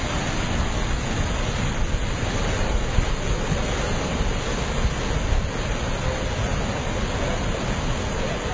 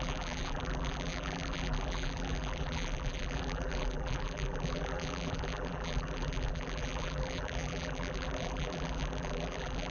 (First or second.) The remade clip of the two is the second